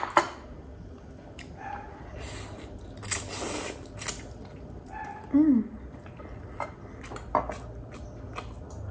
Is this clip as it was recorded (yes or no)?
yes